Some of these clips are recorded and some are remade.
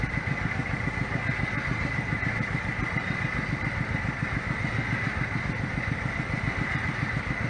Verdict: recorded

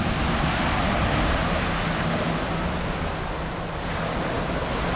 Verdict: recorded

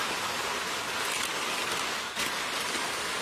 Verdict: recorded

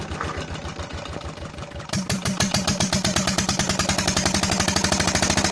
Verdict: recorded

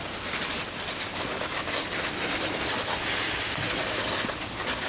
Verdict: recorded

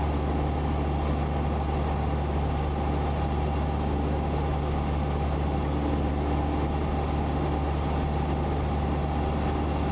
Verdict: recorded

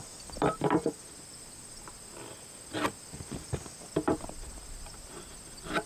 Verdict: recorded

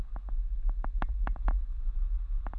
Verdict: recorded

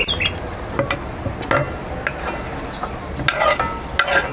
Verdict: recorded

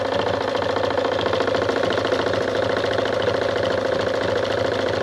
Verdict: remade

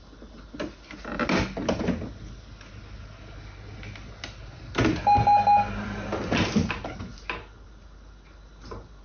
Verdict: recorded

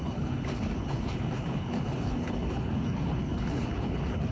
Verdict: remade